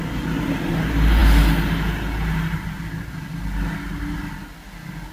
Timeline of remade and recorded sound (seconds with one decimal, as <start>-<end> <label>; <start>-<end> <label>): 0.0-5.1 recorded